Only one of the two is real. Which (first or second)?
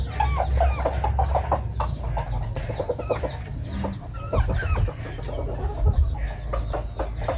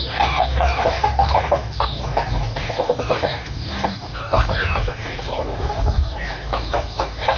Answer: first